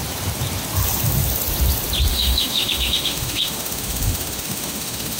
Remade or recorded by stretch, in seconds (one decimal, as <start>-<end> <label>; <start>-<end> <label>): 0.0-2.1 recorded; 2.1-5.2 remade